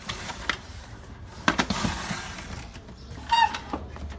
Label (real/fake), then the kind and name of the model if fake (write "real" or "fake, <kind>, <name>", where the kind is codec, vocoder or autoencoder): real